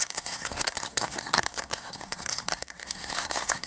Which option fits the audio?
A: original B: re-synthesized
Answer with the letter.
B